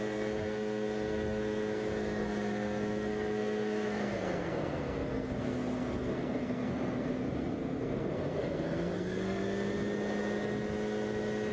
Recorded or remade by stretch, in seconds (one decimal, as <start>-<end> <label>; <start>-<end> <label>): 0.0-9.4 remade; 9.4-11.5 recorded